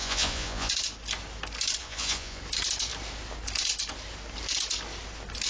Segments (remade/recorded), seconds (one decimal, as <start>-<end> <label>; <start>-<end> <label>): 0.0-0.7 remade; 0.7-1.8 recorded; 1.8-2.4 remade; 2.4-5.5 recorded